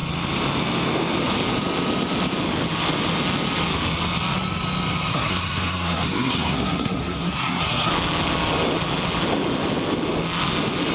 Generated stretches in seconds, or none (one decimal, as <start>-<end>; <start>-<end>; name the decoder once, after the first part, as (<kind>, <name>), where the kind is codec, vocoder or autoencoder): 5.1-7.9 (codec, SNAC)

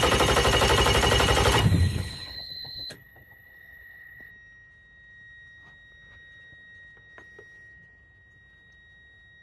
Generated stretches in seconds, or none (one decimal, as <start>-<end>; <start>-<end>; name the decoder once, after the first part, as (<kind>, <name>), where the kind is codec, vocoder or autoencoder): 1.8-4.3 (codec, HILCodec)

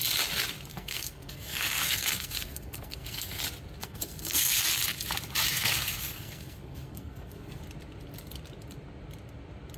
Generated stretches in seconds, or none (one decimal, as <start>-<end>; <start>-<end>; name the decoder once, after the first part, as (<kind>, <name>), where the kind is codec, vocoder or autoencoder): 0.7-3.4 (codec, SNAC); 3.8-4.6; 5.5-7.6

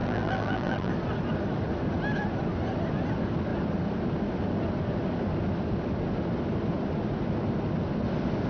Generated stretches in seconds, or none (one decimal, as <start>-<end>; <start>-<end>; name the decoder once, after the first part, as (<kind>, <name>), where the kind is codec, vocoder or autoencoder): 0.0-0.9 (vocoder, BigVGAN v2)

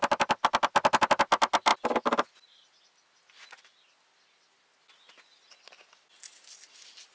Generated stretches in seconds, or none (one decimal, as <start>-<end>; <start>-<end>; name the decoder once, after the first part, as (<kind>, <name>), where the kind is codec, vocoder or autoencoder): none